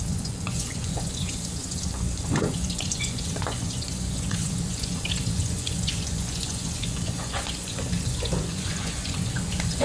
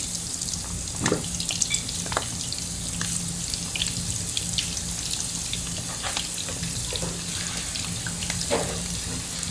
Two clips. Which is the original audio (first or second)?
second